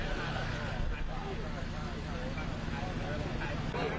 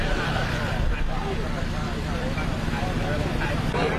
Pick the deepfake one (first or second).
second